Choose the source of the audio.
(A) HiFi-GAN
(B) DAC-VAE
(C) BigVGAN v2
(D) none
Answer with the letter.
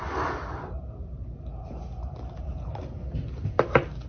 D